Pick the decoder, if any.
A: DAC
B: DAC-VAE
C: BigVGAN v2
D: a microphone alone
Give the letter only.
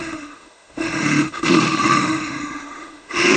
B